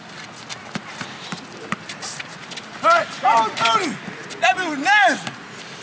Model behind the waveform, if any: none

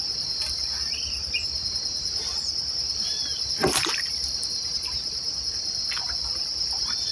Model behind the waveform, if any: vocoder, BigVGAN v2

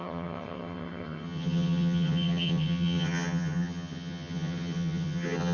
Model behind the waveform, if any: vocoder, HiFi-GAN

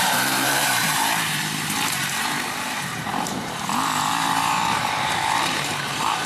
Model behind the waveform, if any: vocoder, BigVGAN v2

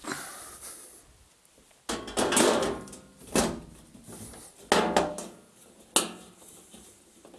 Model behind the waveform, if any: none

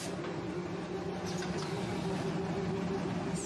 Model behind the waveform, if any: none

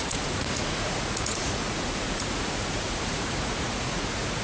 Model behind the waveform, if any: vocoder, Vocos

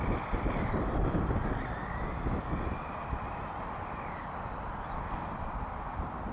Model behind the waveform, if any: none